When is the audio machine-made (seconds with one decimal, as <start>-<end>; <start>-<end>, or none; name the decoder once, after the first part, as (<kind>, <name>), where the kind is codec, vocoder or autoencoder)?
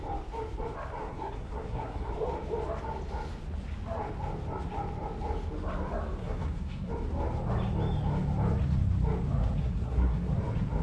1.0-2.1 (codec, SNAC); 6.2-6.9; 9.6-10.3